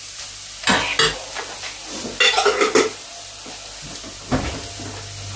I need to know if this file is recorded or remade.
recorded